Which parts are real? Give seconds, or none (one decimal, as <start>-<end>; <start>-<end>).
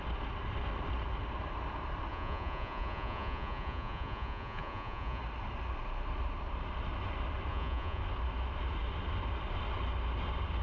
0.0-2.1; 5.2-7.5; 8.0-10.6